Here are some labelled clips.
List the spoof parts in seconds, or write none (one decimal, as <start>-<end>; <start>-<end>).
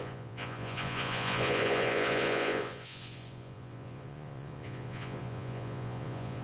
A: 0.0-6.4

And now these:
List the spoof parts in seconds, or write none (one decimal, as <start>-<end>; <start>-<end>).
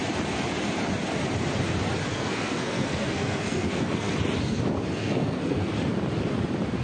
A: 2.1-4.1; 4.9-5.7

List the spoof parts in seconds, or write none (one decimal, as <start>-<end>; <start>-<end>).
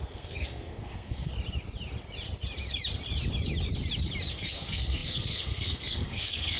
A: 0.0-1.3; 4.3-6.6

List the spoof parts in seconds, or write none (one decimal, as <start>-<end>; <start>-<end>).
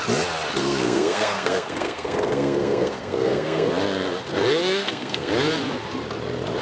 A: 0.6-3.7; 4.3-5.3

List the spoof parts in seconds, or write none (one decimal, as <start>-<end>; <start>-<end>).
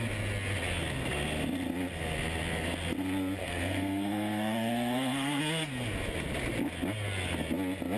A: 3.4-5.4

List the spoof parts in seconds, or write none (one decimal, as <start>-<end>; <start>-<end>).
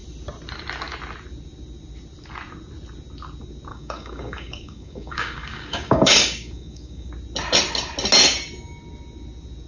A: 3.7-7.1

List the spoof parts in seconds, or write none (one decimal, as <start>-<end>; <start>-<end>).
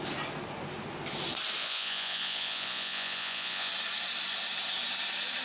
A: 1.6-3.7